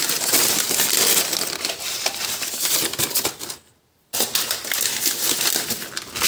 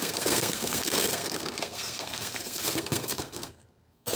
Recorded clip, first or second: first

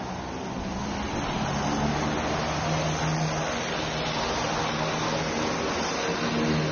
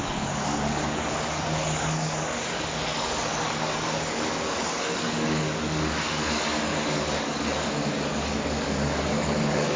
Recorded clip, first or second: first